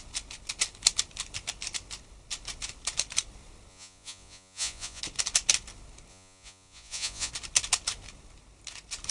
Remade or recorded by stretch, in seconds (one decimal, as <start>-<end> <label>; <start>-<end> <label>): 0.0-3.7 recorded; 3.7-5.0 remade; 5.0-6.1 recorded; 6.1-7.3 remade; 7.3-9.1 recorded